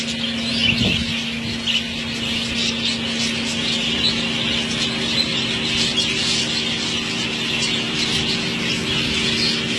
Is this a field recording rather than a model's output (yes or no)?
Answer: yes